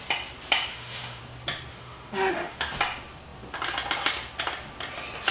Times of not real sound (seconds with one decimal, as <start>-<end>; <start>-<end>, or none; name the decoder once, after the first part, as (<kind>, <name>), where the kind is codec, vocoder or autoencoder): 0.7-1.2 (autoencoder, DAC-VAE); 1.7-2.6